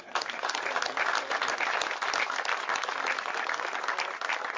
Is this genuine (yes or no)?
yes